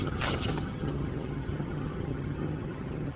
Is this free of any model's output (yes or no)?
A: no